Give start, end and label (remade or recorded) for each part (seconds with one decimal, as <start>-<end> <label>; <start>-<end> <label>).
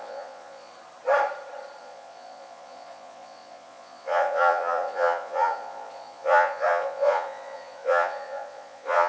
0.0-0.7 remade; 0.7-1.8 recorded; 1.8-9.1 remade